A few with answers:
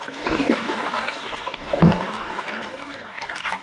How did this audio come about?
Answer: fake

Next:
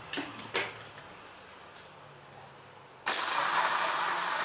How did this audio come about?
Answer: real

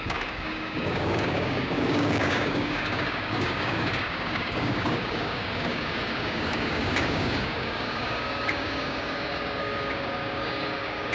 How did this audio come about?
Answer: fake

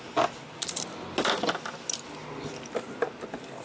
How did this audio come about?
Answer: real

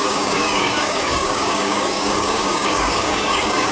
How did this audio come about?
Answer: fake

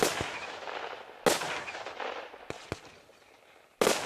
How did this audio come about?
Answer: real